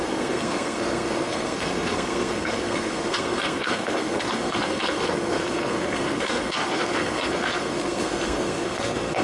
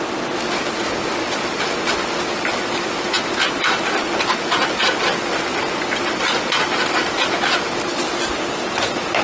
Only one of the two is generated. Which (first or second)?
first